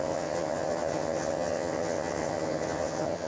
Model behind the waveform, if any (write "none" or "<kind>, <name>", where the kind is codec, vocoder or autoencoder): vocoder, HiFi-GAN